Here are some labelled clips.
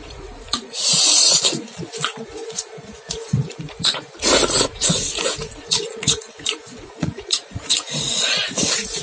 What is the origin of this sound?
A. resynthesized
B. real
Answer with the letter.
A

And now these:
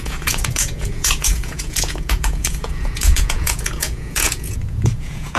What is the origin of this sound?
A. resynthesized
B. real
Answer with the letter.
A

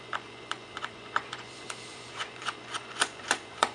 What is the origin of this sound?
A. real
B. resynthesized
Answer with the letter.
B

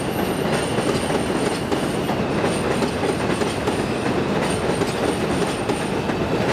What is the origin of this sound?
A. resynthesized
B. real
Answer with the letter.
B